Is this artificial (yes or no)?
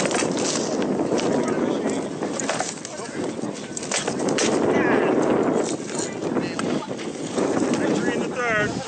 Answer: no